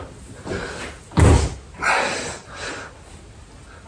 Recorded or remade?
recorded